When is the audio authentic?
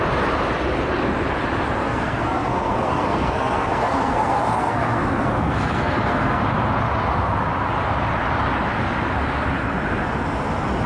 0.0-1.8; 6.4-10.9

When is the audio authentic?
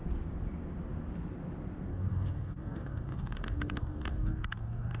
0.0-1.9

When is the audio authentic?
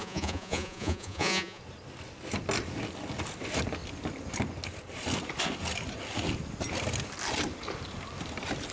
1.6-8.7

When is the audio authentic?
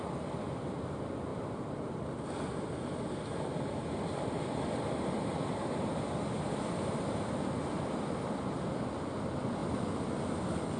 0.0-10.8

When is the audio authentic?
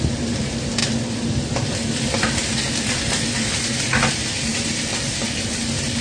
0.0-6.0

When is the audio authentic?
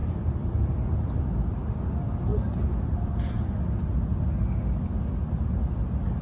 0.6-6.2